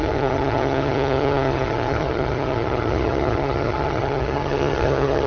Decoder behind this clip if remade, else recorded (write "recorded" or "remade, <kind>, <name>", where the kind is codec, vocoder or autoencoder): remade, vocoder, HiFi-GAN